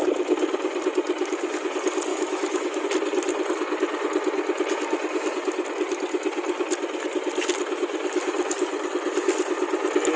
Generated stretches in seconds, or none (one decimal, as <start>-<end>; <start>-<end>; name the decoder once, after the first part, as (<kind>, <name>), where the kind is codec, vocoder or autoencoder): 2.1-2.8 (autoencoder, DAC-VAE)